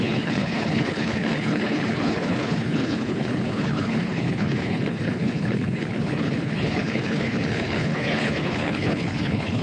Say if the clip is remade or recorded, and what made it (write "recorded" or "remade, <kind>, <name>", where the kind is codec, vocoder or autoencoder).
remade, codec, HILCodec